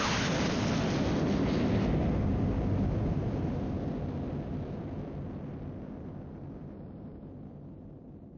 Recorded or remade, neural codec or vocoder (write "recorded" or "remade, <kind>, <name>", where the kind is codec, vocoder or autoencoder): recorded